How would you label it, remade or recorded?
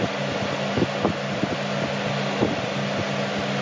recorded